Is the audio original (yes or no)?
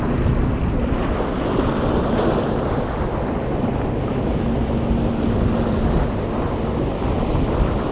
yes